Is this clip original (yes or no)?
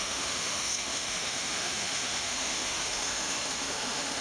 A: no